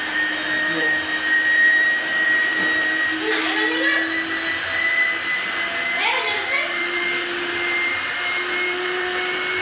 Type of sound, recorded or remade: remade